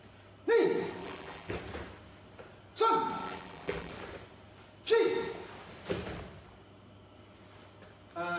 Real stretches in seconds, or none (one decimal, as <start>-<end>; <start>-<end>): 0.0-1.0; 1.5-3.2; 3.9-8.4